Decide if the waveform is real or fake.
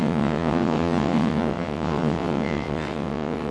fake